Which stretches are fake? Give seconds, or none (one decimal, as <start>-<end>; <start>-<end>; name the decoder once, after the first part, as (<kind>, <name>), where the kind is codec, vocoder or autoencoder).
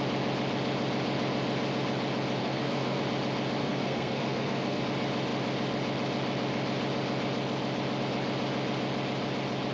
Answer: 2.4-3.0 (codec, SNAC); 3.6-4.8